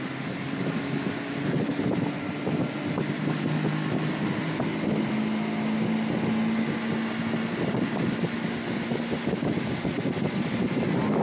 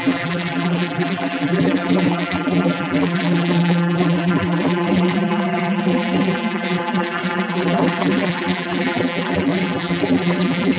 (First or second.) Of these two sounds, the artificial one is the second